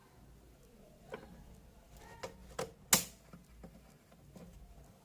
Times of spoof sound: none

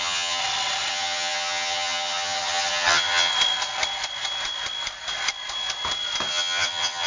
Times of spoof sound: 0.0-0.4 (vocoder, HiFi-GAN); 0.9-3.3; 6.3-7.1

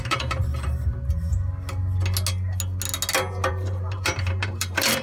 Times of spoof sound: 0.0-0.5 (vocoder, BigVGAN v2); 3.5-5.0

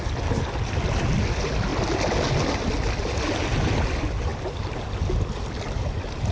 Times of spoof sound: none

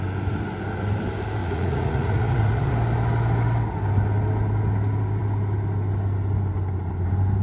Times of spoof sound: 1.4-2.7 (vocoder, Vocos)